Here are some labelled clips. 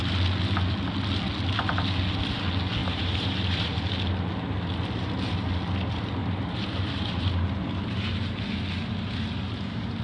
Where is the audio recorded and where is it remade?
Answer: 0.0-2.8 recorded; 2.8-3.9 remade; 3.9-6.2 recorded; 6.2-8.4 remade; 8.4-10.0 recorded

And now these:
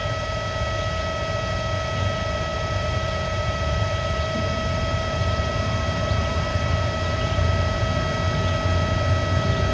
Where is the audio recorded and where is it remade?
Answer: 0.0-0.5 remade; 0.5-2.5 recorded; 2.5-7.8 remade; 7.8-9.7 recorded

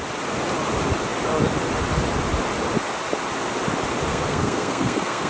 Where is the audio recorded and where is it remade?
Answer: 0.0-4.1 recorded; 4.1-5.3 remade